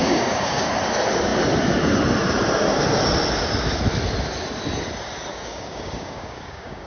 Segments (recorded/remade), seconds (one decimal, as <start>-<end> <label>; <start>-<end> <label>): 0.0-0.7 remade; 0.7-5.3 recorded; 5.3-6.9 remade